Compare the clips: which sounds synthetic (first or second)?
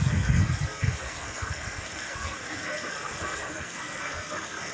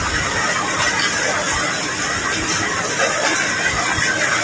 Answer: first